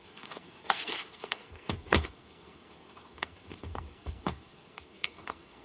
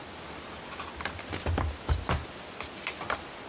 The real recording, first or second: second